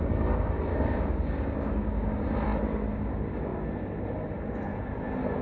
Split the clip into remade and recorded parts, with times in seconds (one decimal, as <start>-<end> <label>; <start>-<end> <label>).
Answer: 0.0-0.7 recorded; 0.7-2.1 remade; 2.1-5.4 recorded